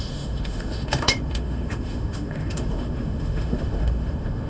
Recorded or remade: remade